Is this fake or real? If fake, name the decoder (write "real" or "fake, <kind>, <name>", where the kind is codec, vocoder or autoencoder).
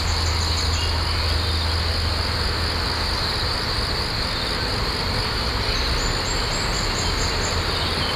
real